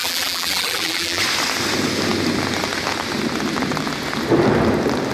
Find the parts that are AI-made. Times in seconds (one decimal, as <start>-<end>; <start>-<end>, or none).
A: 0.0-1.2

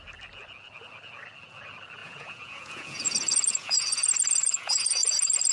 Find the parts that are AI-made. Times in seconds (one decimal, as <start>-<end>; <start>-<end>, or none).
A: 2.0-5.5

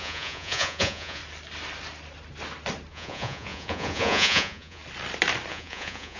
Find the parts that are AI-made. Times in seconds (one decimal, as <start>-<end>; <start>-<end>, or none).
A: 0.0-1.2; 2.9-4.8; 5.5-6.2

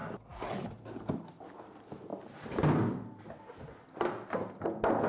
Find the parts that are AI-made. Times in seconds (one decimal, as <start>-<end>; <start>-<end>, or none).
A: 2.1-3.2

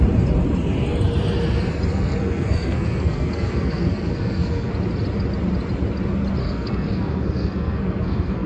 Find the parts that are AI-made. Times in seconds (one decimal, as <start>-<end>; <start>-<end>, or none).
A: 1.9-4.7; 6.4-8.5

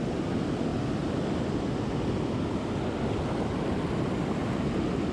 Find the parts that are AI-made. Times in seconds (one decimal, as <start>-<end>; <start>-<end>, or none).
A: none

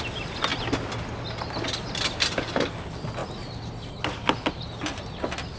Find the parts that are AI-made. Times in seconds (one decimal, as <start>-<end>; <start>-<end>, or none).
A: none

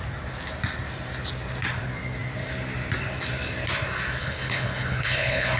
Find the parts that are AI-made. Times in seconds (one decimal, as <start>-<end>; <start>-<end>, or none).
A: 4.2-5.6